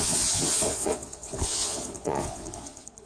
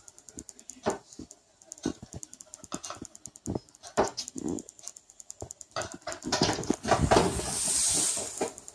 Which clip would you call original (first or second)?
second